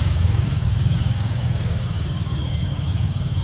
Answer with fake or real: fake